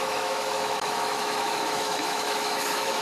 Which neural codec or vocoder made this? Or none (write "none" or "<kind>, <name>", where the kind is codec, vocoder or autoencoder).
autoencoder, DAC-VAE